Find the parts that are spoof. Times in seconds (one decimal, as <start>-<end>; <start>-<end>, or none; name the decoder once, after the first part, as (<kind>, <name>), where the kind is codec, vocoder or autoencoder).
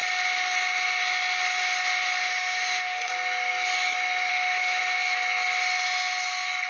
2.2-3.1 (autoencoder, DAC-VAE); 4.3-4.8